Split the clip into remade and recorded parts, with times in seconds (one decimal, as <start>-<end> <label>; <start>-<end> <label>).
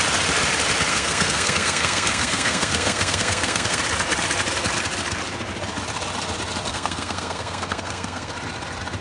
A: 0.0-0.9 recorded; 0.9-3.8 remade; 3.8-6.7 recorded; 6.7-8.3 remade; 8.3-9.0 recorded